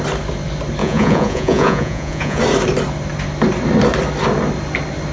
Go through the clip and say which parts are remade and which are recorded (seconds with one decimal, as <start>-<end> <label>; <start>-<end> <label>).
0.0-0.8 recorded; 0.8-2.4 remade; 2.4-5.1 recorded